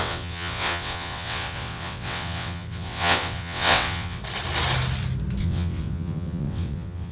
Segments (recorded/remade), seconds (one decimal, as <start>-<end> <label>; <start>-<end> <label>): 0.0-4.2 remade; 4.2-5.4 recorded; 5.4-7.1 remade